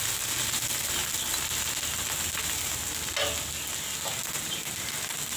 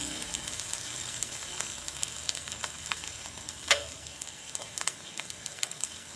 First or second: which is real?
first